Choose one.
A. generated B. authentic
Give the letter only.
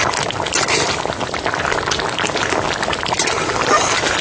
B